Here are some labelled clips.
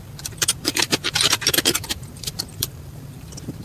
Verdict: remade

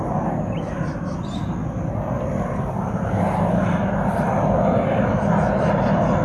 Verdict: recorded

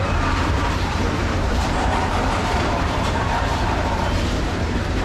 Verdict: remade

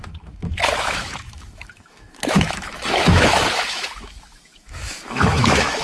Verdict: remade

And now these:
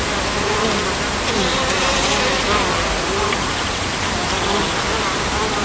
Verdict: recorded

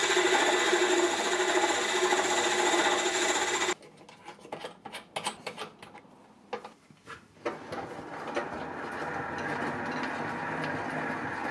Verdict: recorded